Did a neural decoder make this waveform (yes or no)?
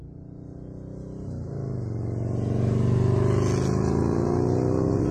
no